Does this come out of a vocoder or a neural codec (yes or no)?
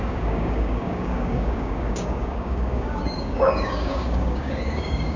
yes